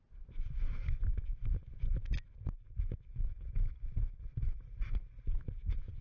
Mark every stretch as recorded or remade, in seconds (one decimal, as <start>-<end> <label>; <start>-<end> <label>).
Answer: 0.0-6.0 recorded